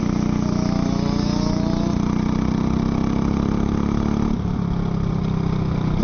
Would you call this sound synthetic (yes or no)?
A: no